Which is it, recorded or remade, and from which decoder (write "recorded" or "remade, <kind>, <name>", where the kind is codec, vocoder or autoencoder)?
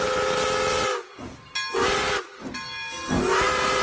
recorded